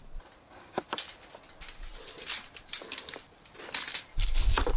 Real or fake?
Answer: real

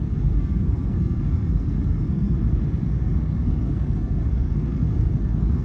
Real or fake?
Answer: fake